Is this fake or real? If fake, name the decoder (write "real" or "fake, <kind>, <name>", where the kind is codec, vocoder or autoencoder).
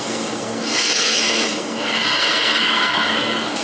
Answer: fake, codec, SNAC